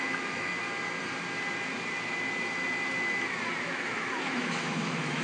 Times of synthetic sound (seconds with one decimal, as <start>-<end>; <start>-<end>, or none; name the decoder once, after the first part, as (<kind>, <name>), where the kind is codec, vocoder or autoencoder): 0.0-0.5 (autoencoder, DAC-VAE); 3.6-5.2